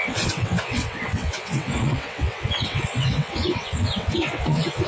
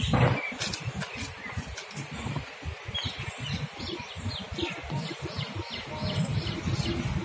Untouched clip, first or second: second